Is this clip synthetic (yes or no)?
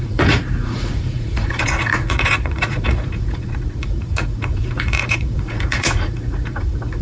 yes